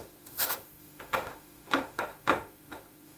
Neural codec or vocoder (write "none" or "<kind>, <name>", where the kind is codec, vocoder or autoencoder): autoencoder, DAC-VAE